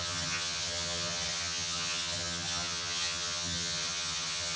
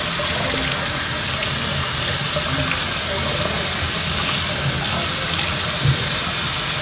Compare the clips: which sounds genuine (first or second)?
second